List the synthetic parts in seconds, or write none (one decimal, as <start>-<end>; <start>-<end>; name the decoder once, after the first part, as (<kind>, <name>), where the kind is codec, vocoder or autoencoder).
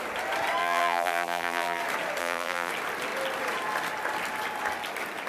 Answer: 0.6-1.8 (vocoder, BigVGAN v2); 2.2-2.7